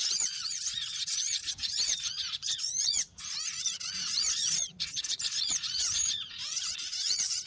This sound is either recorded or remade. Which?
remade